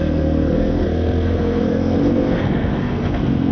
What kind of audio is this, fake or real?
fake